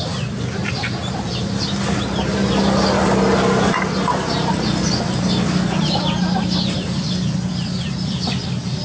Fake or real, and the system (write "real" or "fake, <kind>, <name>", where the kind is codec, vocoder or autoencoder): real